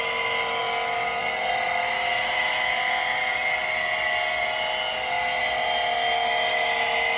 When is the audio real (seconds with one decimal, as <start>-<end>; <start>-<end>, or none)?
0.0-7.2